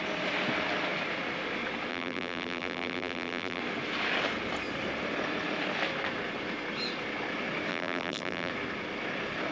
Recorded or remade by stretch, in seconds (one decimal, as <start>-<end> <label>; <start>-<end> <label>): 0.0-1.9 recorded; 1.9-3.6 remade; 3.6-7.7 recorded; 7.7-8.5 remade; 8.5-9.5 recorded